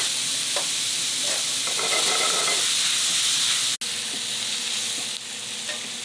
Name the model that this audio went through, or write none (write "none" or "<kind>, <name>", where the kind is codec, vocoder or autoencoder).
none